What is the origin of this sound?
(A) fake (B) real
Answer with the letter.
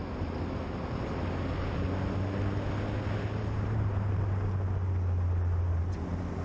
B